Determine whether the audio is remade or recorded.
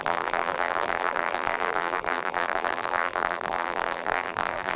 remade